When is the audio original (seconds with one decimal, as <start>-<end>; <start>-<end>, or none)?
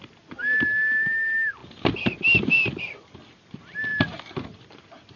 0.0-5.2